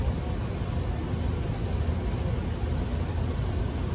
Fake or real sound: real